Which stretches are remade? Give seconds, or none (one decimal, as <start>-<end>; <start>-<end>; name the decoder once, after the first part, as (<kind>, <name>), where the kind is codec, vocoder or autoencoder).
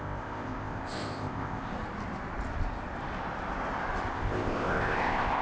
0.0-1.7 (codec, ZipCodec); 4.1-5.4